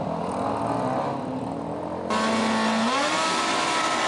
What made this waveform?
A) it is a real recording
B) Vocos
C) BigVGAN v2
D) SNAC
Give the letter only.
A